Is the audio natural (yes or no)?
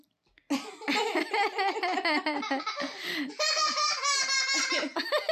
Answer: yes